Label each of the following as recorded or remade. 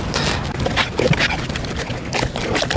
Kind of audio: recorded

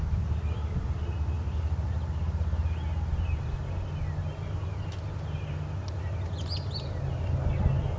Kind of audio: recorded